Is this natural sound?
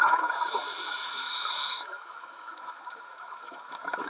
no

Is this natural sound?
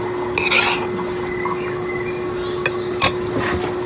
yes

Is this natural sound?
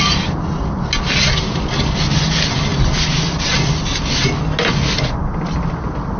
yes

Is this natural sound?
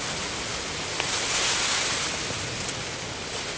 yes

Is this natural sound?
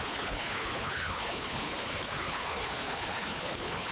no